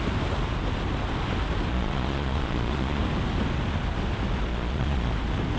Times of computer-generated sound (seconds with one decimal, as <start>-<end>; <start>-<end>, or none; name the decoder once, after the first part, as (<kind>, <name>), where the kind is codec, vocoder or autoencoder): 1.7-3.0 (vocoder, Vocos); 4.5-5.1